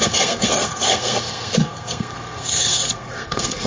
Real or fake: fake